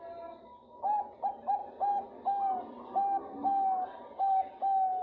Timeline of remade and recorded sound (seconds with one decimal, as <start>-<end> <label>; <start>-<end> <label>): 0.0-5.0 recorded